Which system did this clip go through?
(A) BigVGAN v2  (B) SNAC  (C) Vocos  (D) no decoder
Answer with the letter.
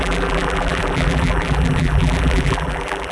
A